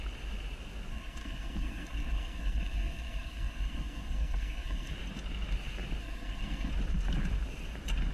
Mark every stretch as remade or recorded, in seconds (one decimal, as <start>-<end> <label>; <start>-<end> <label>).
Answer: 0.0-0.9 recorded; 0.9-4.9 remade; 4.9-6.0 recorded; 6.0-6.7 remade; 6.7-8.1 recorded